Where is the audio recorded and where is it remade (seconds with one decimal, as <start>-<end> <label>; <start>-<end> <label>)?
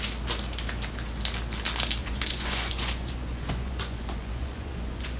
0.0-2.0 recorded; 2.0-5.2 remade